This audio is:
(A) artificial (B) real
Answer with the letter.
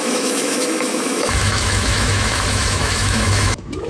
A